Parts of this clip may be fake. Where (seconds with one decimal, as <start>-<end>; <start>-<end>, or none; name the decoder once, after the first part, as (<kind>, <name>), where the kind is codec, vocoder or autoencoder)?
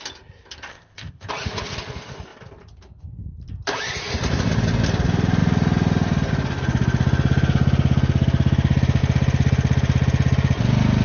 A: 0.7-1.3 (codec, ZipCodec)